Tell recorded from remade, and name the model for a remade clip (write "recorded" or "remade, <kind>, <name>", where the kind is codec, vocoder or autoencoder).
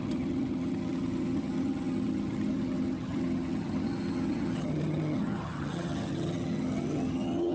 remade, vocoder, HiFi-GAN